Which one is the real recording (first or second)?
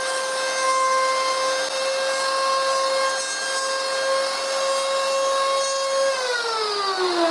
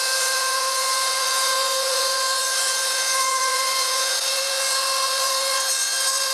first